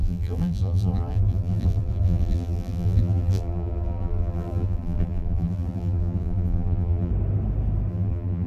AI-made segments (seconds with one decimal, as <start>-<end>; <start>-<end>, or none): 0.0-7.1; 7.9-8.5